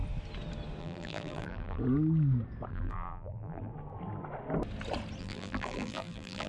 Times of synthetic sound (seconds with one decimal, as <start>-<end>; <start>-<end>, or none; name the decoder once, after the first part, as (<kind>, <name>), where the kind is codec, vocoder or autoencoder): 0.8-1.8 (vocoder, BigVGAN v2); 2.7-3.7; 5.2-6.5